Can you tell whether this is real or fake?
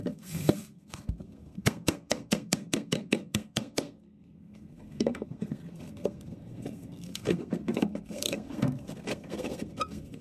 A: fake